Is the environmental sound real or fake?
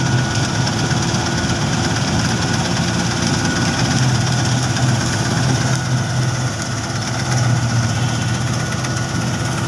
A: real